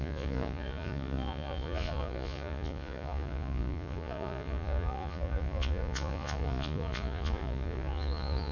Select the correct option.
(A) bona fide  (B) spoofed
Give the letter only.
B